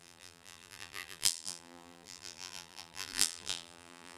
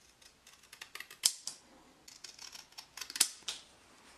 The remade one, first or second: first